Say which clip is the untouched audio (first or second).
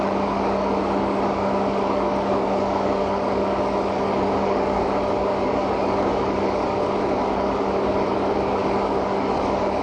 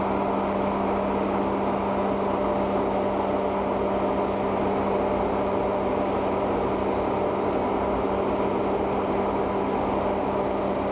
second